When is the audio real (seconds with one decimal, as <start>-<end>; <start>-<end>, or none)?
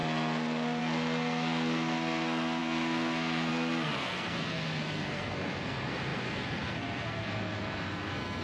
none